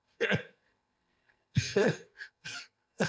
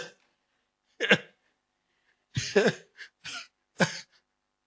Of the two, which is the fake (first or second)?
first